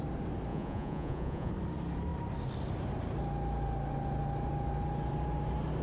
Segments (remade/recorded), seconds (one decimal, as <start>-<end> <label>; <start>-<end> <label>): 0.0-0.5 recorded; 0.5-1.5 remade; 1.5-5.8 recorded